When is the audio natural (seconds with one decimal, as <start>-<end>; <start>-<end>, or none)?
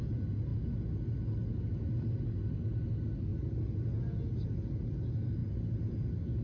0.0-6.4